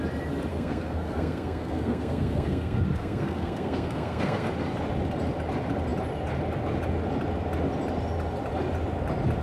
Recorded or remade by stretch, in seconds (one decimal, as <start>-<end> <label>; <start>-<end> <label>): 0.0-0.5 recorded; 0.5-4.5 remade; 4.5-9.4 recorded